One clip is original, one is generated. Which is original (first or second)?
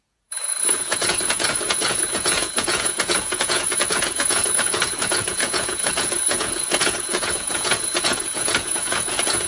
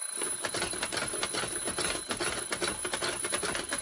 second